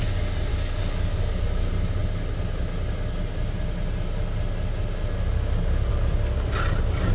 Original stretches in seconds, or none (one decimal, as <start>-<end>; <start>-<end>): 0.0-0.5; 1.4-7.1